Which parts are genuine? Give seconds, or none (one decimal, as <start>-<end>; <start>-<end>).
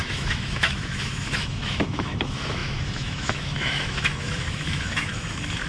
none